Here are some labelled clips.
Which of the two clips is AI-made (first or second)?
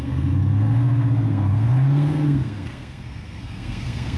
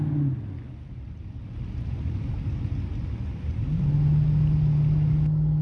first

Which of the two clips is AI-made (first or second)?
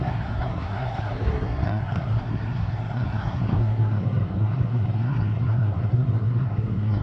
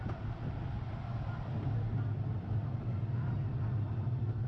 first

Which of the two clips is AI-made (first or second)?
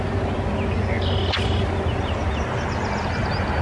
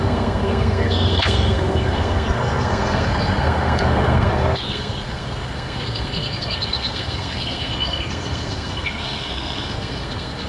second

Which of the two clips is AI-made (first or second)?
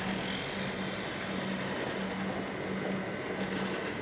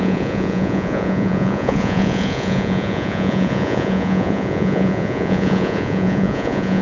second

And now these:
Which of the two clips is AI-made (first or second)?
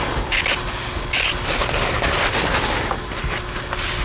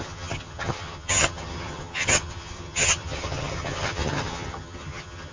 second